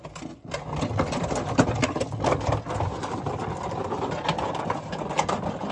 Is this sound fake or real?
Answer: real